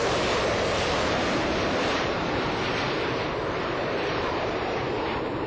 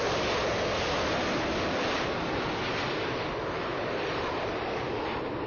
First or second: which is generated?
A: first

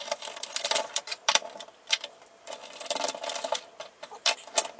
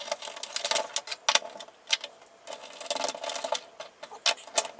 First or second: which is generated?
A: first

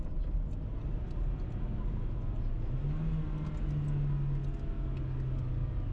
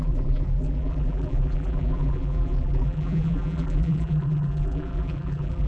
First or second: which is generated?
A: second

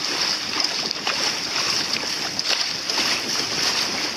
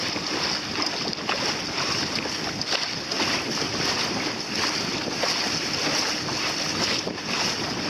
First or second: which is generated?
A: first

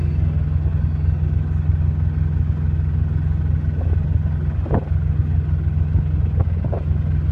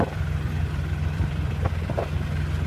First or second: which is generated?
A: second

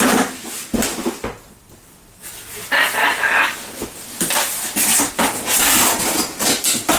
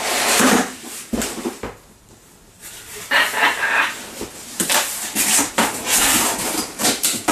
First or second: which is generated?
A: second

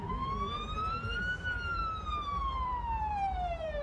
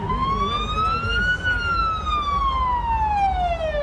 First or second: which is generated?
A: first